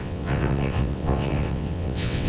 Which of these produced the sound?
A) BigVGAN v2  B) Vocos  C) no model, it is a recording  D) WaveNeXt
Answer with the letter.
D